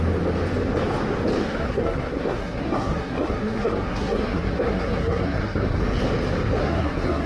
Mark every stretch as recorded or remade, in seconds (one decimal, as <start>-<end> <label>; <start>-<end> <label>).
0.0-1.4 recorded; 1.4-5.8 remade; 5.8-6.6 recorded; 6.6-7.3 remade